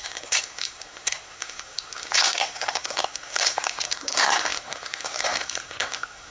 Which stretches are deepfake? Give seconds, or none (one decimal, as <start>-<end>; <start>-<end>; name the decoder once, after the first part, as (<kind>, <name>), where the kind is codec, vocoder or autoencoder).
0.0-6.3 (codec, SNAC)